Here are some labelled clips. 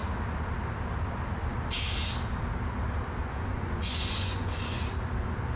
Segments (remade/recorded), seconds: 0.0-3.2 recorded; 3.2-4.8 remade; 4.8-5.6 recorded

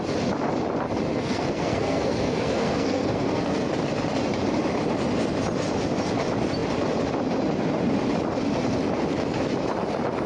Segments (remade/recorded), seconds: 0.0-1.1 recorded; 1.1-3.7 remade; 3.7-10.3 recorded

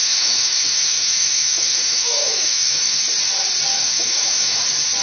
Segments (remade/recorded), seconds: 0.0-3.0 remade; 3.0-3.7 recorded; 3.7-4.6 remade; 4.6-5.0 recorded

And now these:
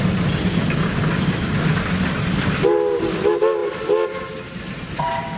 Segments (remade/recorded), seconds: 0.0-5.4 recorded

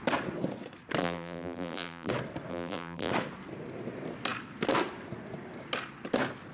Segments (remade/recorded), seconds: 0.0-1.0 recorded; 1.0-2.1 remade; 2.1-2.5 recorded; 2.5-3.1 remade; 3.1-6.5 recorded

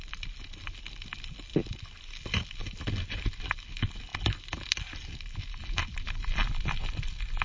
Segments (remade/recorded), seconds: 0.0-7.4 recorded

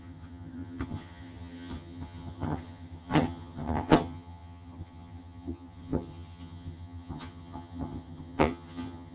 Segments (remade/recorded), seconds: 0.0-9.1 remade